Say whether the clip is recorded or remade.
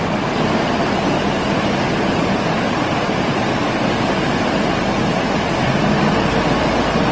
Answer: recorded